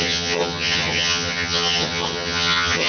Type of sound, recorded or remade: remade